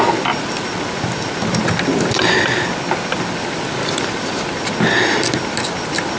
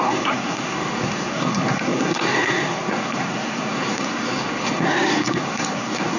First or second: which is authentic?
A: first